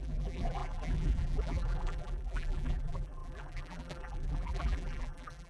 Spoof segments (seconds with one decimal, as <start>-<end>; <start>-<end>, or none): 0.0-5.5